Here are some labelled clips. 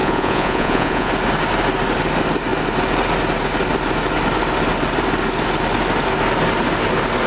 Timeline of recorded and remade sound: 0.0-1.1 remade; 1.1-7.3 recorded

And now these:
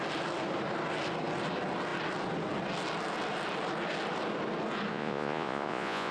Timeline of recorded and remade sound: 0.0-4.9 recorded; 4.9-6.1 remade

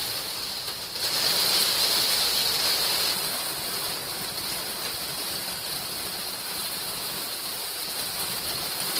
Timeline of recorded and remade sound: 0.0-9.0 recorded

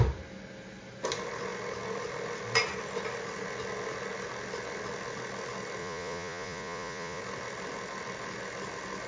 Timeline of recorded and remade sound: 0.0-5.8 recorded; 5.8-7.2 remade; 7.2-9.1 recorded

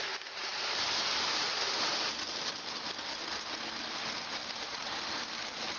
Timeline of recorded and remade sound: 0.0-5.8 recorded